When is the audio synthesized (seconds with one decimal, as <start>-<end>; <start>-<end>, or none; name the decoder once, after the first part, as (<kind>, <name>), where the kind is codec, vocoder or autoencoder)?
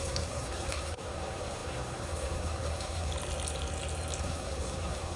0.0-3.1 (codec, SNAC); 4.2-5.2